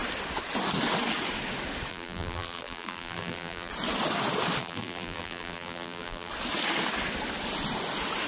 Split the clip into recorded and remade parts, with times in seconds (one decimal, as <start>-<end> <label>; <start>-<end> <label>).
0.0-1.9 recorded; 1.9-3.7 remade; 3.7-4.6 recorded; 4.6-6.3 remade; 6.3-8.3 recorded